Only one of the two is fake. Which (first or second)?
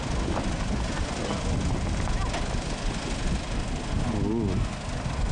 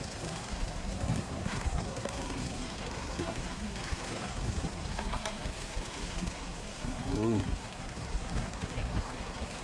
second